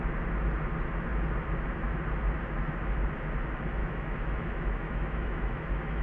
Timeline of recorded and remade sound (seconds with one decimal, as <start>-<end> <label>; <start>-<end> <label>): 0.0-3.8 recorded; 3.8-6.0 remade